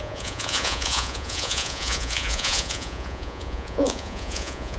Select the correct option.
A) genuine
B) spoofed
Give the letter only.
B